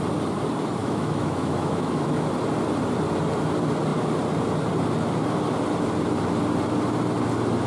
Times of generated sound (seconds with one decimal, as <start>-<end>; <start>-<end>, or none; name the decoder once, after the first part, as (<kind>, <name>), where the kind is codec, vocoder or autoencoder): 0.8-2.3 (autoencoder, DAC-VAE)